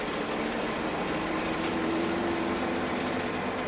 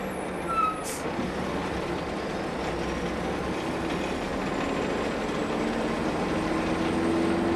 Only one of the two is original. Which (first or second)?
second